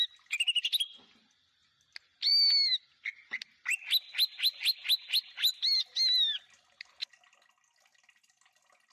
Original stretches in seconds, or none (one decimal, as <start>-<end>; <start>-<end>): 0.0-8.9